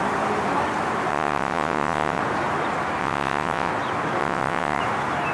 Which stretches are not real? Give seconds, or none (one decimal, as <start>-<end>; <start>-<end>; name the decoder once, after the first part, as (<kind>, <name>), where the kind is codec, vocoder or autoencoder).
1.1-2.2 (vocoder, WaveNeXt); 3.0-3.7; 4.2-4.8